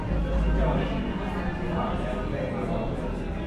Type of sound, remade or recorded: recorded